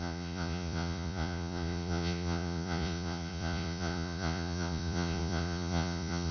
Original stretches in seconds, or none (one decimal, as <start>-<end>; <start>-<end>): none

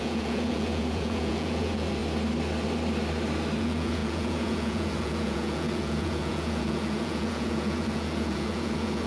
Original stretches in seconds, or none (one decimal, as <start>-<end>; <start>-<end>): 2.0-3.6